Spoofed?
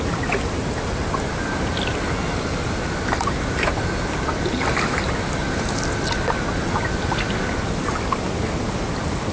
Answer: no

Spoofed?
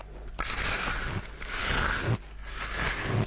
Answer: no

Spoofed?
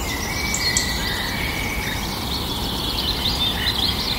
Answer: no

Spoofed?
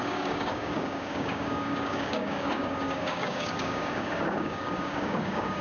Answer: yes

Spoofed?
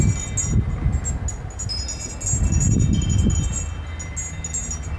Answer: no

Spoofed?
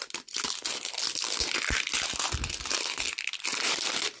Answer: no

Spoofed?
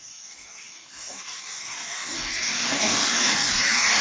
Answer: yes